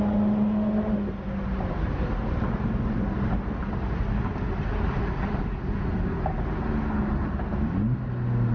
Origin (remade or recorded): recorded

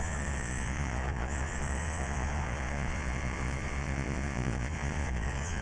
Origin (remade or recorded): remade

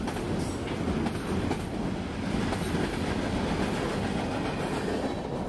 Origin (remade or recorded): recorded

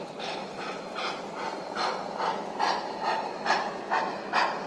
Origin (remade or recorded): recorded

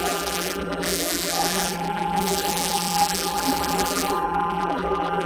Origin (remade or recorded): remade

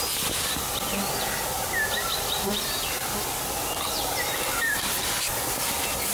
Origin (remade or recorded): recorded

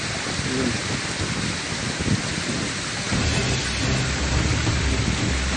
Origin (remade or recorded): recorded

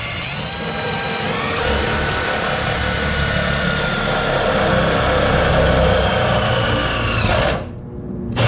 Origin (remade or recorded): recorded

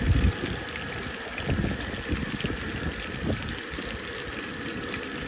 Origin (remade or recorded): recorded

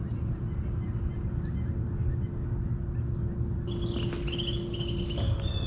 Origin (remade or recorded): recorded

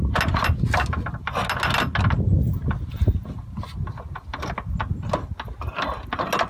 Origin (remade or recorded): recorded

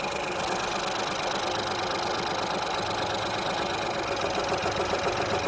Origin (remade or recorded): recorded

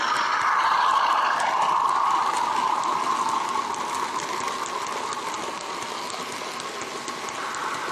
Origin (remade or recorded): recorded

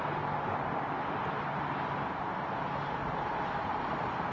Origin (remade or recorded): recorded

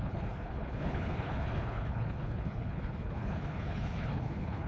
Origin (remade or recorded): remade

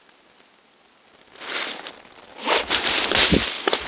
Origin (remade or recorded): recorded